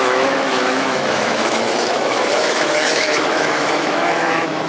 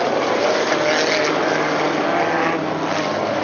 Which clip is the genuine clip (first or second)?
second